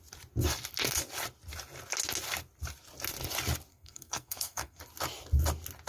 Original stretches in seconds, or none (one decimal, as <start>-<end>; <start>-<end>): 0.0-3.7; 4.8-5.9